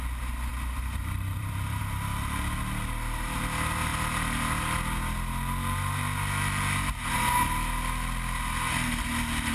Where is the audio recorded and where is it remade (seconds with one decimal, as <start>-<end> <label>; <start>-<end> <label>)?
0.0-0.5 recorded; 0.5-1.8 remade; 1.8-9.5 recorded